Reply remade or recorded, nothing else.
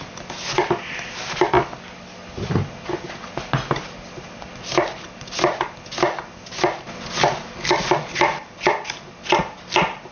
recorded